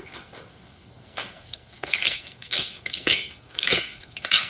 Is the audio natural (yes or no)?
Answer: no